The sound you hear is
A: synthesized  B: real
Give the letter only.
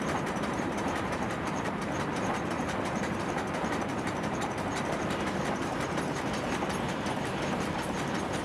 A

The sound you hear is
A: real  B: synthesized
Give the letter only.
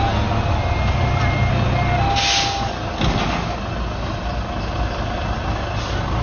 A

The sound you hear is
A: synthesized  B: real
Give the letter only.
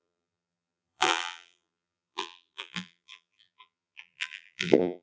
A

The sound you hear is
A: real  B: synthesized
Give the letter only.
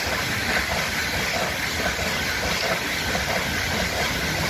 A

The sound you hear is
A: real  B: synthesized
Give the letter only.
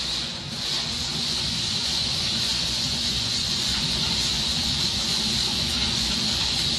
B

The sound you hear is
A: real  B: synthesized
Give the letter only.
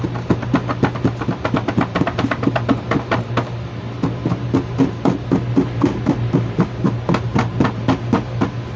A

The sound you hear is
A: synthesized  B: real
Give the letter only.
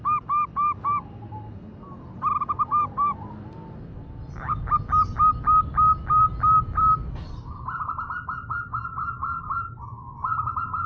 B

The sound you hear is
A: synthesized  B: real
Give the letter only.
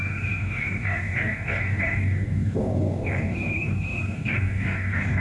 A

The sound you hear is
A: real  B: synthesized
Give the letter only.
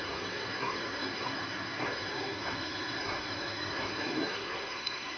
B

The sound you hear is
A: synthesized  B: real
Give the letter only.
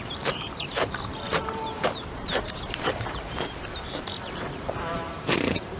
A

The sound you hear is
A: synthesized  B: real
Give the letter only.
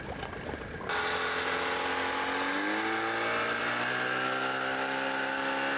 B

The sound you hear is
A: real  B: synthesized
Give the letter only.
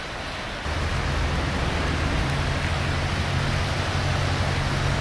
A